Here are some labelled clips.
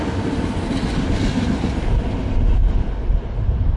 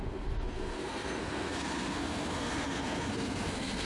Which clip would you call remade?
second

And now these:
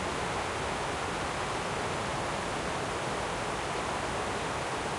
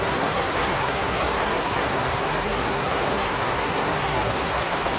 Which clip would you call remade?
second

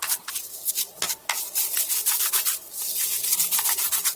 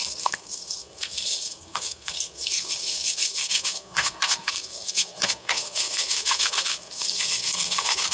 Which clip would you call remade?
second